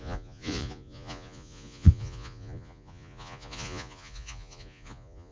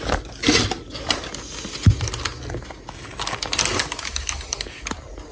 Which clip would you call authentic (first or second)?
second